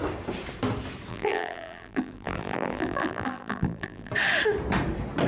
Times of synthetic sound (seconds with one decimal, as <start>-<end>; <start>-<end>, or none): 1.1-4.1